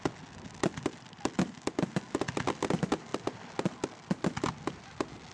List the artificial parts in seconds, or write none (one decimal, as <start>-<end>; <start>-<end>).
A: none

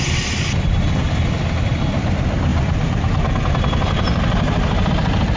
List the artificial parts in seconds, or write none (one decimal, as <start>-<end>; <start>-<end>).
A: 2.5-4.9